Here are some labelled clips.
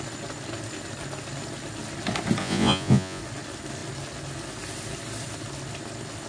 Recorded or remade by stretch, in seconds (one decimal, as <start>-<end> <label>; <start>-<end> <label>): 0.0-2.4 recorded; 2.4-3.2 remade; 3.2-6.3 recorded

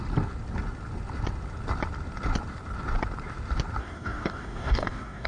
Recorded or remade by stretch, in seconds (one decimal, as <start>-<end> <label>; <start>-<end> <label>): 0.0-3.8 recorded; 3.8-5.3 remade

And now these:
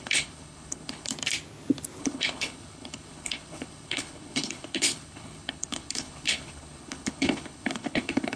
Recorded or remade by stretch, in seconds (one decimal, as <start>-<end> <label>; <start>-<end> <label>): 0.0-1.1 remade; 1.1-2.0 recorded; 2.0-8.4 remade

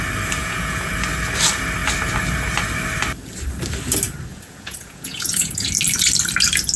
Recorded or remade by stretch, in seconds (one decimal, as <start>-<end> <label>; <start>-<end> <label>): 0.0-0.4 recorded; 0.4-0.9 remade; 0.9-4.3 recorded; 4.3-5.7 remade; 5.7-6.8 recorded

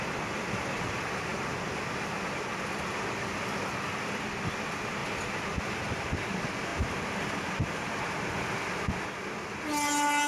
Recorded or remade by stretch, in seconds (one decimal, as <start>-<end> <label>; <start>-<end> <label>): 0.0-10.3 recorded

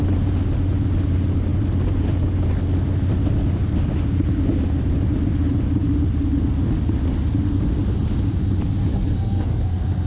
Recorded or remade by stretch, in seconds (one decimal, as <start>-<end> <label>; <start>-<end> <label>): 0.0-8.9 recorded; 8.9-9.6 remade; 9.6-10.1 recorded

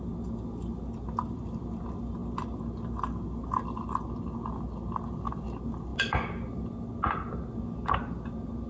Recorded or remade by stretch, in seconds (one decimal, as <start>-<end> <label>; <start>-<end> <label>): 0.0-8.7 recorded